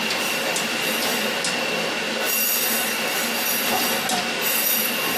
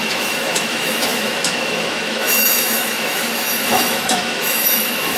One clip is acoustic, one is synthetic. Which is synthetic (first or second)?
second